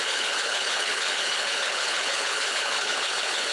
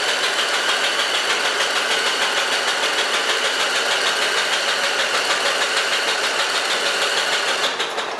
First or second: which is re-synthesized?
first